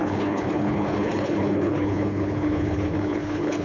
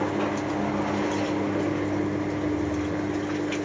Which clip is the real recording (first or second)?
second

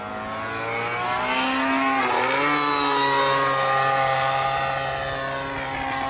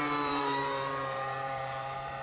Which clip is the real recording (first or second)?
first